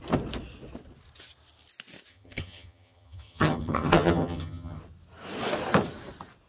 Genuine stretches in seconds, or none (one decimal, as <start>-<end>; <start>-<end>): 0.0-2.1; 4.8-6.5

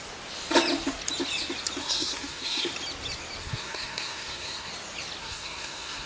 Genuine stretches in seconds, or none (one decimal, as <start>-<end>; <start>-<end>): 0.0-1.8; 2.7-3.4; 4.7-5.2

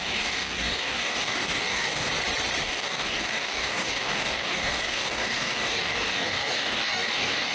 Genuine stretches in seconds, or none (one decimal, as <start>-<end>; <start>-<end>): 2.1-2.6

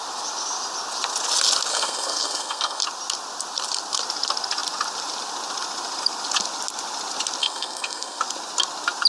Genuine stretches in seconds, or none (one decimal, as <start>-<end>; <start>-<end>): 0.0-1.7; 2.8-7.4; 8.2-9.1